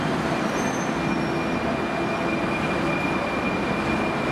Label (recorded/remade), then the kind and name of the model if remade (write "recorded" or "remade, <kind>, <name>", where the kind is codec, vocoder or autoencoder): recorded